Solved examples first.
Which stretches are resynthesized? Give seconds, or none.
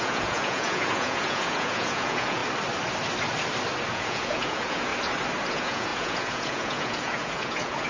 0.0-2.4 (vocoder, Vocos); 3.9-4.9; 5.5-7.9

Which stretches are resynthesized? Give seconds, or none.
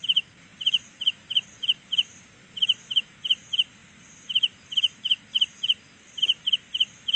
none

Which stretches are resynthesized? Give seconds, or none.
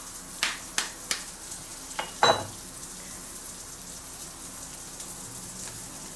none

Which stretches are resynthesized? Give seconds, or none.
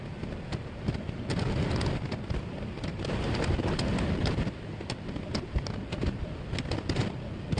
2.9-4.9 (vocoder, BigVGAN v2)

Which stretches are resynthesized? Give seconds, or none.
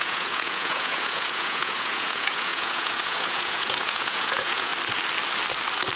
0.0-4.7 (vocoder, Vocos)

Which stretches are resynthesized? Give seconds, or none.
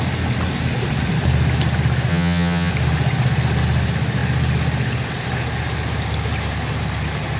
2.1-2.7 (vocoder, HiFi-GAN)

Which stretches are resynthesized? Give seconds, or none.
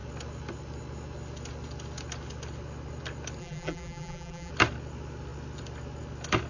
3.4-4.5 (vocoder, BigVGAN v2)